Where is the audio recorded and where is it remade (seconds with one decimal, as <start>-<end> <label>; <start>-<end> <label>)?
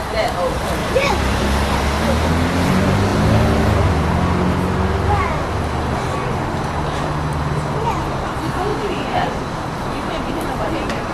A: 0.0-0.8 recorded; 0.8-1.4 remade; 1.4-8.7 recorded; 8.7-11.1 remade